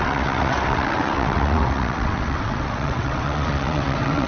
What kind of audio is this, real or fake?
fake